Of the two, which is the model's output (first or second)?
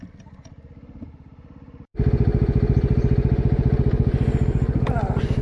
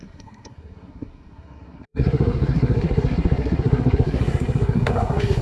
second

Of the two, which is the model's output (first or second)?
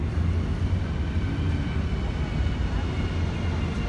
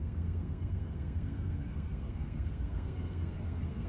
second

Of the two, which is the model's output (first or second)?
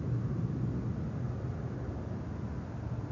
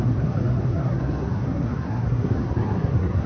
second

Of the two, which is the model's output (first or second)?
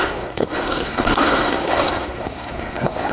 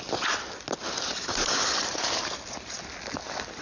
first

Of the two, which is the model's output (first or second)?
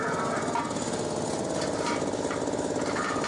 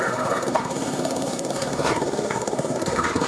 second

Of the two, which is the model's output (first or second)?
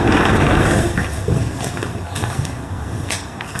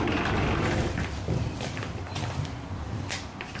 first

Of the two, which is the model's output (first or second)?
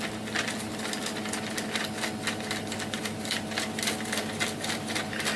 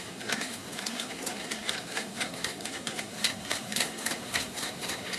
second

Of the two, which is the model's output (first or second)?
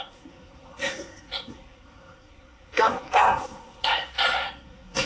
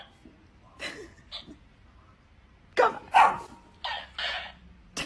first